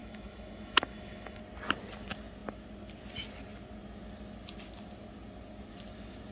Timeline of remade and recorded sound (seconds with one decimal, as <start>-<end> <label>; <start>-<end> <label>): 0.0-1.4 remade; 1.4-6.3 recorded